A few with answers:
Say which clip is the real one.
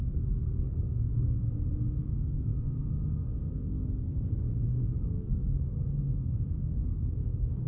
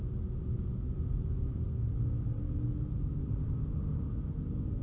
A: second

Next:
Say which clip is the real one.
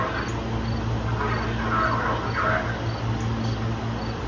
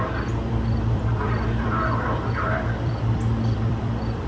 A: first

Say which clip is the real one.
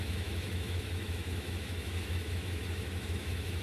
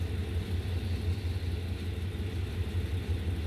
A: second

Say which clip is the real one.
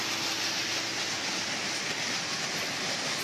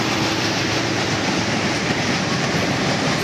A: first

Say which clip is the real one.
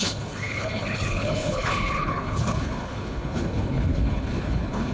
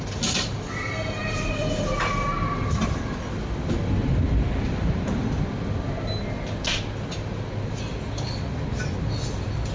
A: second